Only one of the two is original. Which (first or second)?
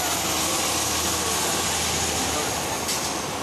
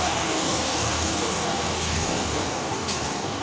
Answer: first